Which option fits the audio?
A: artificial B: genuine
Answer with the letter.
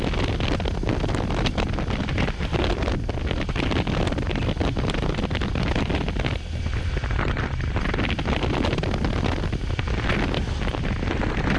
B